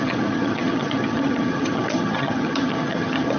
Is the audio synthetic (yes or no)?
yes